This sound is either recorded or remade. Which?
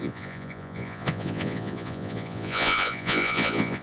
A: remade